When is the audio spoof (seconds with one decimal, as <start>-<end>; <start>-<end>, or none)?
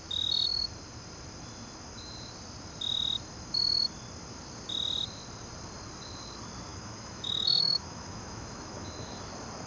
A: 6.7-9.2